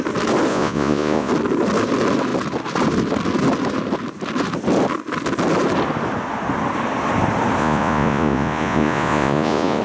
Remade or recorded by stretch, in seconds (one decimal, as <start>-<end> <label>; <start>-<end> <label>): 0.0-0.5 recorded; 0.5-1.3 remade; 1.3-7.6 recorded; 7.6-9.8 remade